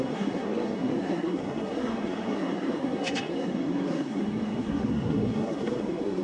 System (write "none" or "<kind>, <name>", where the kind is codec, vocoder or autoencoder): codec, SNAC